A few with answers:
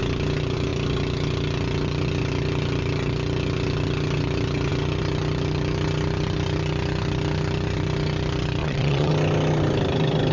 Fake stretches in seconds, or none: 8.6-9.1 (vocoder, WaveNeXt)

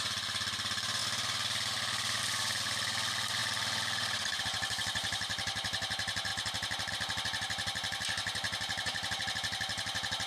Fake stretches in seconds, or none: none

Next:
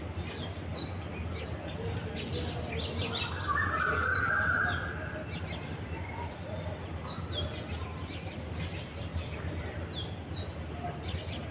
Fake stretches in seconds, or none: none

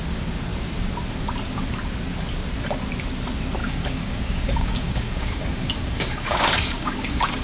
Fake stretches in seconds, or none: 3.6-7.4 (codec, DAC)